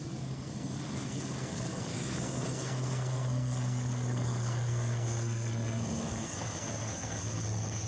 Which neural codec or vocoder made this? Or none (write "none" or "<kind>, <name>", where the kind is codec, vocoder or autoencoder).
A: codec, SNAC